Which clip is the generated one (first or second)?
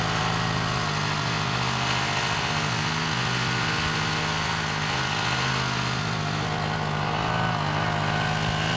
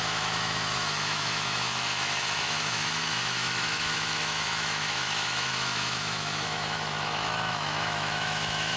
second